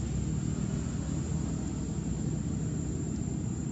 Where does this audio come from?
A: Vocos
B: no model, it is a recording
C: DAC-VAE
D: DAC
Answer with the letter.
B